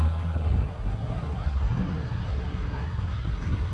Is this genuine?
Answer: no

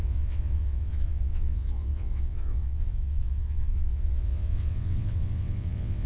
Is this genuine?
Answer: no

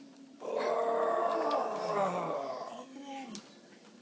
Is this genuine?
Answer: yes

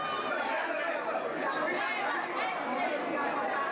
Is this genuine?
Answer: no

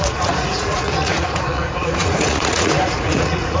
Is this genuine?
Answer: no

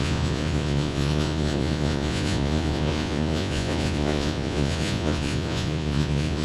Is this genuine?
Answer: no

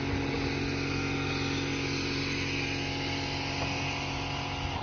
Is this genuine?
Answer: yes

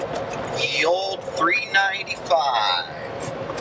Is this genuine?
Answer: yes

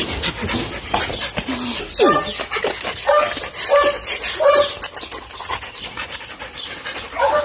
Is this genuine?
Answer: yes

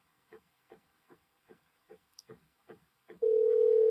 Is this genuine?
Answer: no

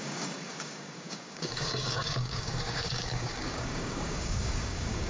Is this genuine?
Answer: no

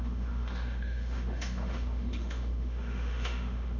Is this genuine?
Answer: no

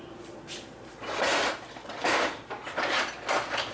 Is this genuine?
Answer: no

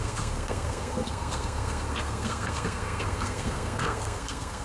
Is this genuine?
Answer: no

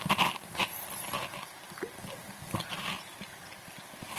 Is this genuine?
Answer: no